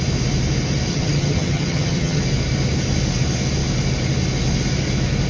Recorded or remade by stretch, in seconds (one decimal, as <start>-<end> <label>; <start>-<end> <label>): 0.0-0.9 recorded; 0.9-2.2 remade; 2.2-5.3 recorded